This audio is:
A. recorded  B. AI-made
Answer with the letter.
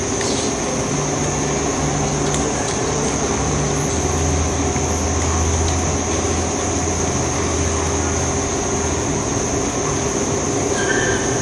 A